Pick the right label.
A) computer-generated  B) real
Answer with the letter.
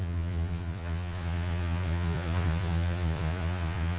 A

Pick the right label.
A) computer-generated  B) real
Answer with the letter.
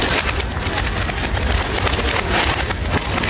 B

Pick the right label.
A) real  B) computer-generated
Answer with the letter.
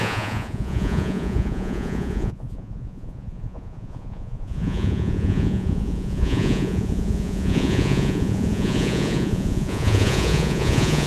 B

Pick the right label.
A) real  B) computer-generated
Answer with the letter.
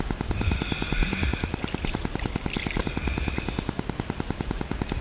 A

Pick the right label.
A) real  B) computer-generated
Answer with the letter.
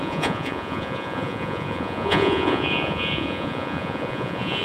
B